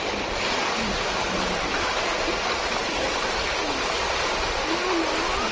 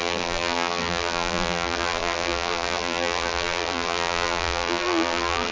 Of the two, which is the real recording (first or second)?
first